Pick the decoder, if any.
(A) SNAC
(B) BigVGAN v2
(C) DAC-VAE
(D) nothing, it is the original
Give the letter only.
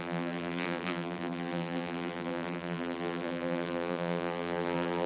B